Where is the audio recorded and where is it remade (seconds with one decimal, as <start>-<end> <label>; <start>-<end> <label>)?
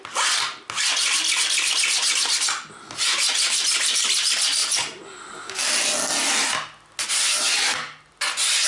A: 0.0-4.6 recorded; 4.6-5.6 remade; 5.6-8.7 recorded